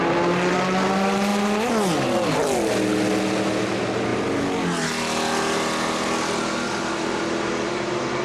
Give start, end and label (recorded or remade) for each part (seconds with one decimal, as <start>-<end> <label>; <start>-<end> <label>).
0.0-8.2 recorded